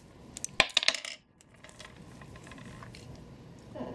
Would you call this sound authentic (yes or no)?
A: yes